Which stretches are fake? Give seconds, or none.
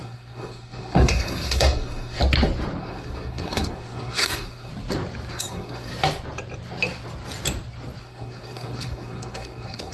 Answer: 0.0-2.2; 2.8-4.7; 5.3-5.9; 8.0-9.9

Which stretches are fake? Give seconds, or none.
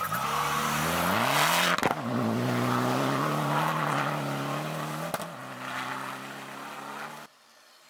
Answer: none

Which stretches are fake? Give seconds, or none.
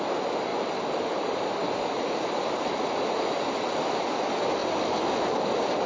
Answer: none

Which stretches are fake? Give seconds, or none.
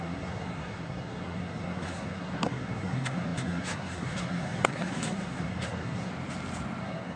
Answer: 0.0-6.1; 6.8-7.2